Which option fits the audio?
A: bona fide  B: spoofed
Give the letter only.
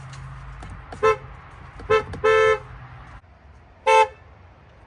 A